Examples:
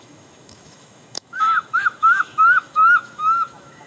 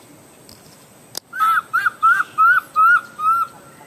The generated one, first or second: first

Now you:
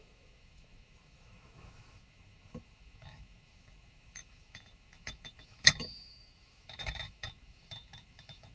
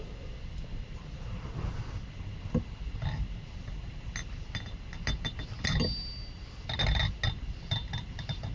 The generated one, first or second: first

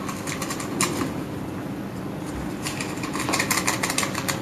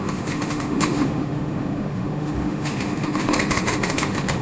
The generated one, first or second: second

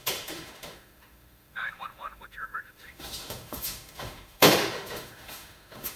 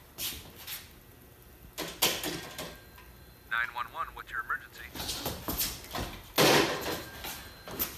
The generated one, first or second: first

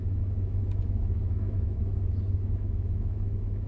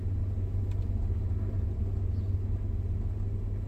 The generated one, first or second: first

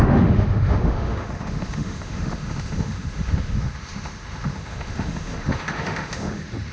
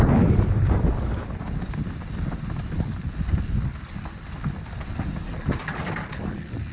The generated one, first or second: first